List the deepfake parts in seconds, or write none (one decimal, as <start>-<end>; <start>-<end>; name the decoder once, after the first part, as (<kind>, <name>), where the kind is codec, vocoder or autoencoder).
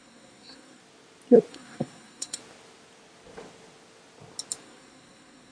0.0-0.8 (codec, SNAC); 1.5-2.4; 4.6-5.5